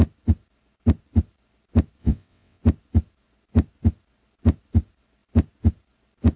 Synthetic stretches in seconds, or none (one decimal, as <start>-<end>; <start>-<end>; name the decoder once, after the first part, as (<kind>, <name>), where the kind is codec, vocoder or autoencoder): 2.0-2.6 (vocoder, WaveNeXt)